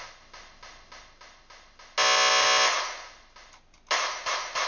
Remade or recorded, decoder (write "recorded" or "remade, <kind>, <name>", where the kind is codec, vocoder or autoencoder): recorded